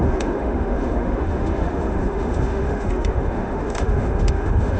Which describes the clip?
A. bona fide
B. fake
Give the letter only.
B